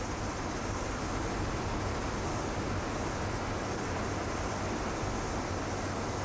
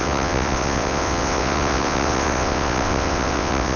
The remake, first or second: second